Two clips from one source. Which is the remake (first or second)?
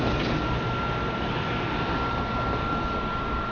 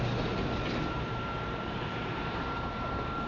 second